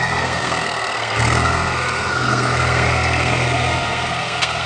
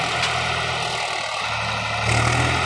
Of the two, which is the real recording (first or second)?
second